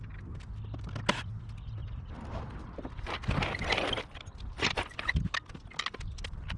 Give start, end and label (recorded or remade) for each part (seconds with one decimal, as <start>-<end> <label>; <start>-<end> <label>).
0.0-1.8 recorded; 1.8-5.8 remade; 5.8-6.6 recorded